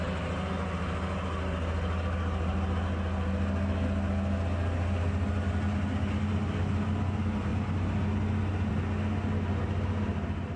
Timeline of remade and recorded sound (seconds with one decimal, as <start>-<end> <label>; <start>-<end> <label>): 0.0-10.6 recorded